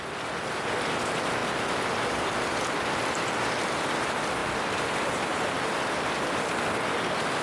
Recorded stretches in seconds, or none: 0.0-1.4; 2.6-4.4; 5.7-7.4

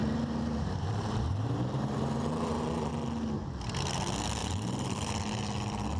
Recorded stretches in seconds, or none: 2.9-4.4; 5.1-6.0